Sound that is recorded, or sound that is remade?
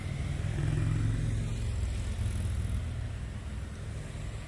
recorded